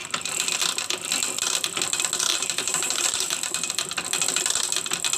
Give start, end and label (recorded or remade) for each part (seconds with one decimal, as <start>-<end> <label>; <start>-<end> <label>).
0.0-2.3 recorded; 2.3-3.7 remade; 3.7-5.2 recorded